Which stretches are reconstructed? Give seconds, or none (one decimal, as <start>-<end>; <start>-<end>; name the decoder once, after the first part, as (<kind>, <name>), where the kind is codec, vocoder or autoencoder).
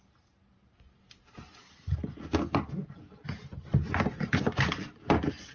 none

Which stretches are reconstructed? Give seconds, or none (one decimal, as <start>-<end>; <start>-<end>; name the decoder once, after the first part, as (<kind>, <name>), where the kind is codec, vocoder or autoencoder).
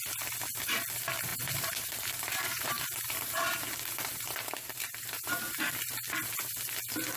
1.3-5.6 (vocoder, BigVGAN v2)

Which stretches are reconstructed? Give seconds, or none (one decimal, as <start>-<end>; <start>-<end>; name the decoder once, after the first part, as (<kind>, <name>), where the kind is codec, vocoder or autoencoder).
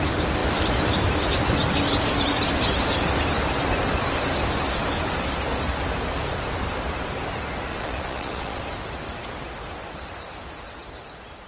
7.7-8.6 (vocoder, Vocos)